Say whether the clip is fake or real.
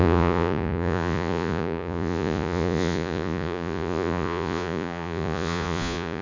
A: fake